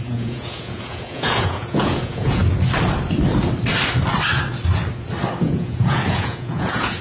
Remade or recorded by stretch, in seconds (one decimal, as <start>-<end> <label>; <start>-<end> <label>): 0.0-2.4 remade; 2.4-5.4 recorded; 5.4-7.0 remade